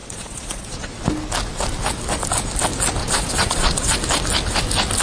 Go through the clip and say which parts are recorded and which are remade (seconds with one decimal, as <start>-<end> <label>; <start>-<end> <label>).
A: 0.0-1.0 remade; 1.0-3.0 recorded; 3.0-3.9 remade; 3.9-5.0 recorded